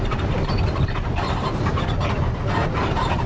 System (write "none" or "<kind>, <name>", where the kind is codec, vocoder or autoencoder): vocoder, BigVGAN v2